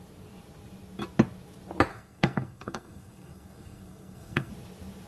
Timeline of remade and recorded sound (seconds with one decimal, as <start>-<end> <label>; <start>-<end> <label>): 0.0-1.9 recorded; 1.9-4.5 remade; 4.5-5.1 recorded